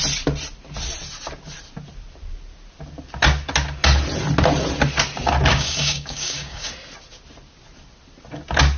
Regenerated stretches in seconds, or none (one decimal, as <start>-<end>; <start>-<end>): 5.5-6.7